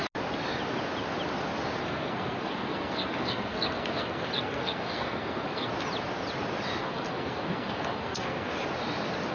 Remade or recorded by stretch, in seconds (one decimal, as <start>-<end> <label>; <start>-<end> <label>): 0.0-1.8 recorded; 1.8-5.7 remade; 5.7-6.8 recorded; 6.8-8.5 remade; 8.5-9.3 recorded